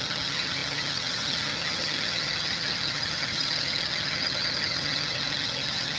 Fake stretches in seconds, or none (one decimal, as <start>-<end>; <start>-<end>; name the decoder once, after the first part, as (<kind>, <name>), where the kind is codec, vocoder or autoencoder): 0.0-6.0 (vocoder, HiFi-GAN)